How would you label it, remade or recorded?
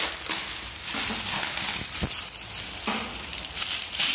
recorded